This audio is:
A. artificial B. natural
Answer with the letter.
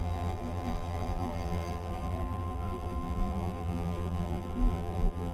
A